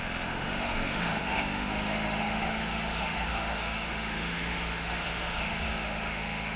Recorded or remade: remade